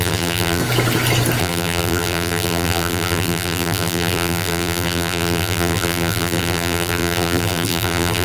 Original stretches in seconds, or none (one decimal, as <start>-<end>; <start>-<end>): 0.6-1.4